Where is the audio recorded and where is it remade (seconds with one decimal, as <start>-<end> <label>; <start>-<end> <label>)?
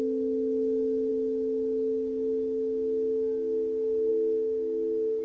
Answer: 0.0-5.2 recorded